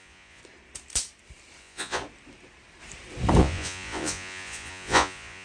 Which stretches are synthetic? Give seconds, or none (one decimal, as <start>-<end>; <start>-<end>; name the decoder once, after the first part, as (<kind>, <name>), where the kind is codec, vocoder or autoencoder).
0.0-0.4 (vocoder, Vocos); 1.6-2.0; 3.4-5.4